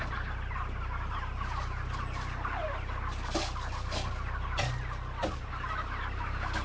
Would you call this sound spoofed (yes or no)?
no